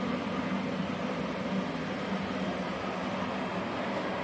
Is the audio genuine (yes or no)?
yes